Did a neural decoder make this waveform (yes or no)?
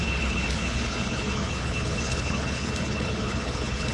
yes